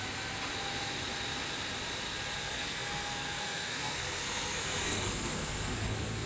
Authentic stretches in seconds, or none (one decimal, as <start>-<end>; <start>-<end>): 0.0-2.4